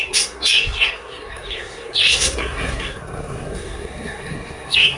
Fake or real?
fake